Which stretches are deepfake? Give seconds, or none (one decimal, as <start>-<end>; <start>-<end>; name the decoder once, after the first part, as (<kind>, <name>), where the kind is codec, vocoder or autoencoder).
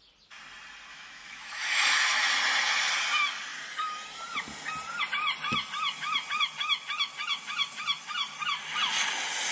0.9-2.3 (autoencoder, DAC-VAE)